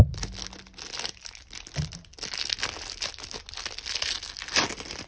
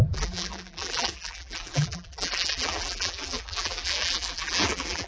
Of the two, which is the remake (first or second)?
second